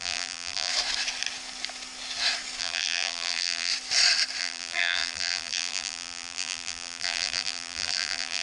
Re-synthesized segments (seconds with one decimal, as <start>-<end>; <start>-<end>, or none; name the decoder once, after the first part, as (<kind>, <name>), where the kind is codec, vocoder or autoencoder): 0.0-0.7 (vocoder, BigVGAN v2); 2.6-3.7; 4.4-8.4